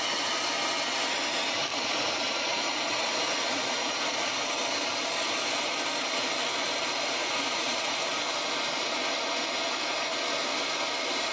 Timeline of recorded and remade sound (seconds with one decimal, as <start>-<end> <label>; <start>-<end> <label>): 0.0-1.7 recorded; 1.7-4.3 remade; 4.3-7.2 recorded; 7.2-8.1 remade; 8.1-11.3 recorded